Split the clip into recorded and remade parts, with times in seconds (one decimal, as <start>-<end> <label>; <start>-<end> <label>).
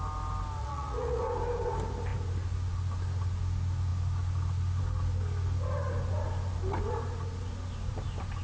0.0-0.6 recorded; 0.6-1.2 remade; 1.2-8.4 recorded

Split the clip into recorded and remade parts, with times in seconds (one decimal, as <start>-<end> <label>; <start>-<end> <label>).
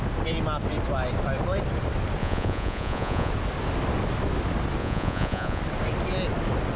0.0-2.2 recorded; 2.2-3.3 remade; 3.3-4.8 recorded; 4.8-5.6 remade; 5.6-6.8 recorded